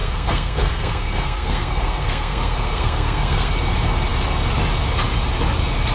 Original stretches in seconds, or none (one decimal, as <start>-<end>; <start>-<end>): 3.5-5.9